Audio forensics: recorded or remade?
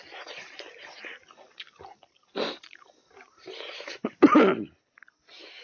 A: recorded